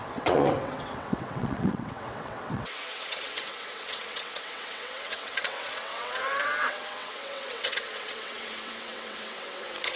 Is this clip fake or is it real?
fake